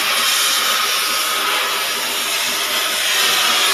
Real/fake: real